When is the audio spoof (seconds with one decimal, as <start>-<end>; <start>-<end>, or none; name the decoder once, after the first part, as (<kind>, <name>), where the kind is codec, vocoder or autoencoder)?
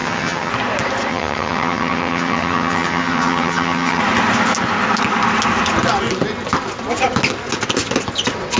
0.0-0.5 (vocoder, HiFi-GAN); 1.1-4.0